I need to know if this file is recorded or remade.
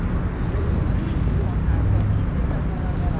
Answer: recorded